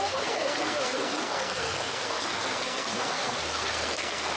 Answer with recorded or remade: remade